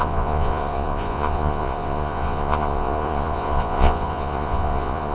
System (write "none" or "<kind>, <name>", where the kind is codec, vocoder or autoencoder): vocoder, Vocos